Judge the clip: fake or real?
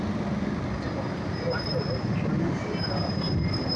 real